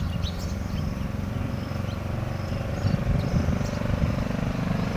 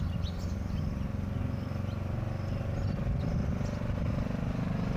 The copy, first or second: first